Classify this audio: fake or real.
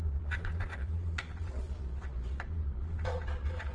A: fake